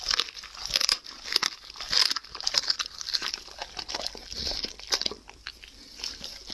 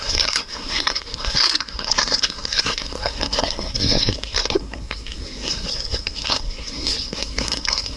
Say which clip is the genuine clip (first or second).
first